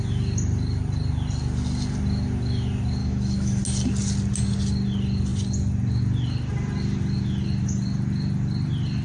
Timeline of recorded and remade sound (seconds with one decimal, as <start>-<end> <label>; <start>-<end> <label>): 0.0-3.0 recorded; 3.0-3.6 remade; 3.6-9.0 recorded